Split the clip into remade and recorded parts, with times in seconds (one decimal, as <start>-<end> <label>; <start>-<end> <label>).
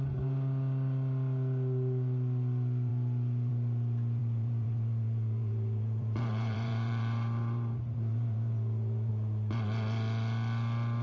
0.0-4.2 recorded; 4.2-9.1 remade; 9.1-11.0 recorded